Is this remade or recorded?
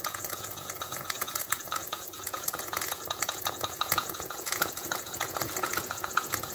remade